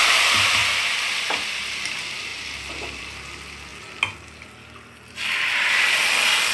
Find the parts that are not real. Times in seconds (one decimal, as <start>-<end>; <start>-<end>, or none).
2.3-3.0